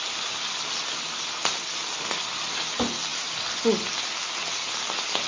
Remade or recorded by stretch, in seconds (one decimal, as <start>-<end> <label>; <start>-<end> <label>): 0.0-5.3 recorded

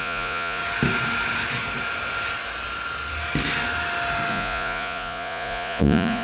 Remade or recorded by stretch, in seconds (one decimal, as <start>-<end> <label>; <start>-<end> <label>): 0.0-0.6 remade; 0.6-4.3 recorded; 4.3-6.2 remade

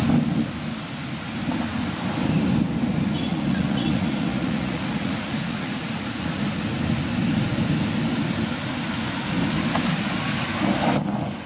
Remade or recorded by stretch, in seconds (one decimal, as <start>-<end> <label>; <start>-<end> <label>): 0.0-3.3 recorded; 3.3-6.4 remade; 6.4-11.5 recorded

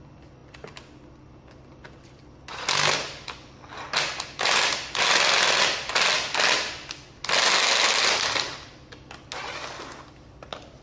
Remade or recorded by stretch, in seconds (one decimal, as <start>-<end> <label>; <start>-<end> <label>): 0.0-10.8 recorded

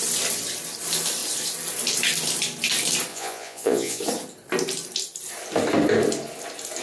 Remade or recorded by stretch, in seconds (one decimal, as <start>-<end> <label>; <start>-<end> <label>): 0.0-3.1 recorded; 3.1-4.0 remade; 4.0-6.8 recorded

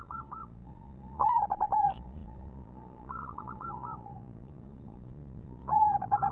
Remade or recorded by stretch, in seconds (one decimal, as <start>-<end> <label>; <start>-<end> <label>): 0.0-6.3 remade

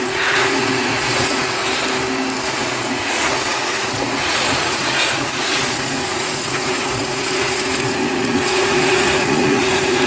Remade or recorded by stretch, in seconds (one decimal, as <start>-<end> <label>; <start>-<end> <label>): 0.0-1.6 remade; 1.6-2.5 recorded; 2.5-10.1 remade